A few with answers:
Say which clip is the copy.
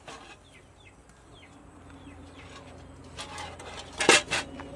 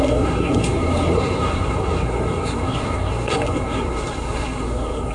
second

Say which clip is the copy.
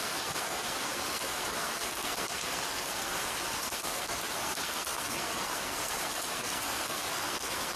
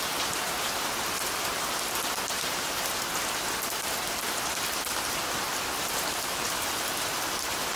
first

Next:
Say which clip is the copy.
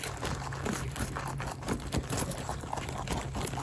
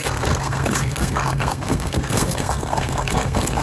second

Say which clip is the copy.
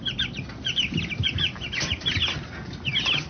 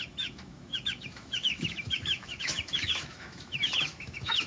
second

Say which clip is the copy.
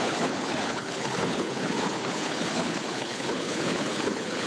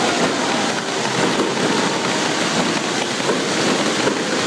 first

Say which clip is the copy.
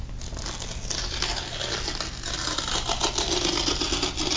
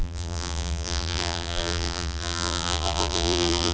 second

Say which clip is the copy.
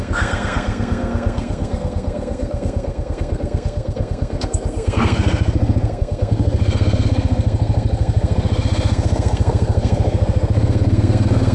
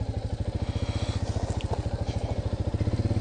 first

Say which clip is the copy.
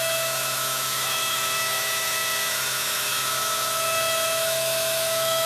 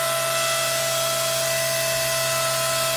first